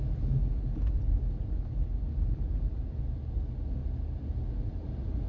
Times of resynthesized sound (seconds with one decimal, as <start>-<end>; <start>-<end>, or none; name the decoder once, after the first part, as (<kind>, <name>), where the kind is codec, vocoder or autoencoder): none